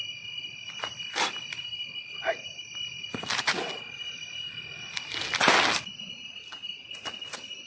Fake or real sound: real